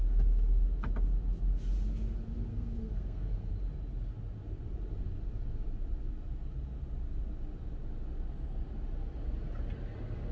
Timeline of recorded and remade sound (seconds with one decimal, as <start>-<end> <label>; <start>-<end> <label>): 0.0-2.5 recorded; 2.5-3.5 remade; 3.5-10.3 recorded